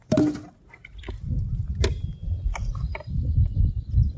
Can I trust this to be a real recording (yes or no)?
yes